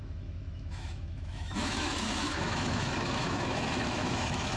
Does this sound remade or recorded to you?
remade